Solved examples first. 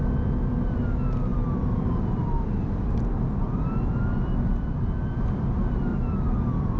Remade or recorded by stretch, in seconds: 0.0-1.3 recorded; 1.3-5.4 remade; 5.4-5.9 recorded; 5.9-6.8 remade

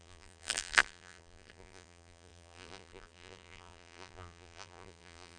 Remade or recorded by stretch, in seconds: 0.0-5.4 remade